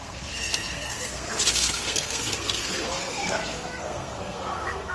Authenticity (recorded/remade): remade